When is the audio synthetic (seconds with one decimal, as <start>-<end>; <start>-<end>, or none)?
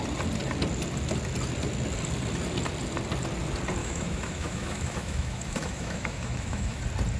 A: 3.8-6.8